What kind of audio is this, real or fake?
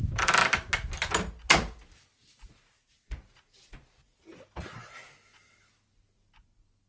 real